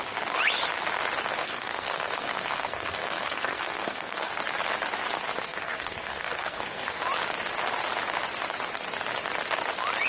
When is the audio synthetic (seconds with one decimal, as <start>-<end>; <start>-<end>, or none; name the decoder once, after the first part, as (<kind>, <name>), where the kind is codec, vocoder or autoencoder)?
1.4-4.3 (codec, SNAC); 5.5-7.0